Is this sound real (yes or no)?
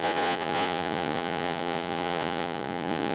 no